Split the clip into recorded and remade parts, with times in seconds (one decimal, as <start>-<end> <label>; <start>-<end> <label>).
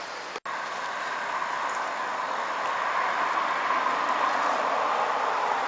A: 0.0-5.7 recorded